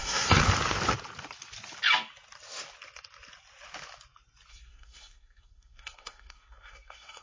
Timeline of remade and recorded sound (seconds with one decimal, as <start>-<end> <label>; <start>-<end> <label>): 0.0-0.4 remade; 0.4-4.5 recorded; 4.5-7.2 remade

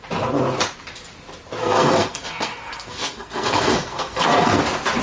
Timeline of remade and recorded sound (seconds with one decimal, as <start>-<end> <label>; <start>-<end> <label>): 0.0-1.6 recorded; 1.6-4.6 remade; 4.6-5.0 recorded

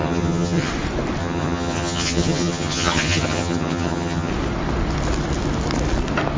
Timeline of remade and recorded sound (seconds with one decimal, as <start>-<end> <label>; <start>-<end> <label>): 0.0-0.7 remade; 0.7-1.2 recorded; 1.2-4.3 remade; 4.3-6.4 recorded